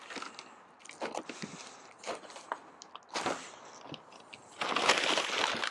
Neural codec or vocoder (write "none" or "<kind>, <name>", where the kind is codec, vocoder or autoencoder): none